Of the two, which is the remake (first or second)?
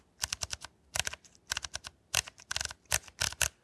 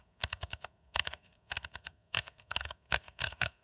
second